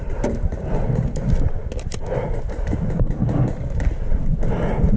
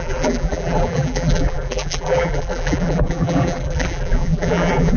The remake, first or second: second